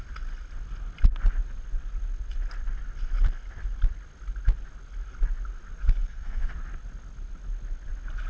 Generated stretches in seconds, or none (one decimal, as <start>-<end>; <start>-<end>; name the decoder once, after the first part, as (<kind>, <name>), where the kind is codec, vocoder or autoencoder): 6.0-6.5 (codec, SNAC)